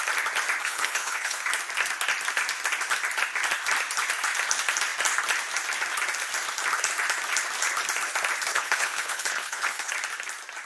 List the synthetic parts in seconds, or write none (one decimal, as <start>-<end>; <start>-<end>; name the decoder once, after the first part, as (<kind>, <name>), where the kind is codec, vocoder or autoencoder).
0.6-1.5 (codec, HILCodec); 8.5-9.9